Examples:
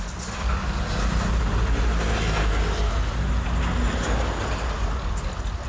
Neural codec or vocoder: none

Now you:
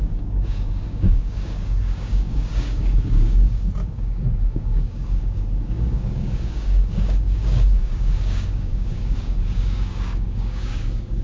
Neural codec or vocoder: codec, DAC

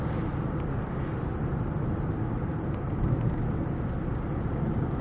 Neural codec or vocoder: none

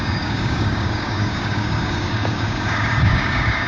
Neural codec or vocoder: codec, DAC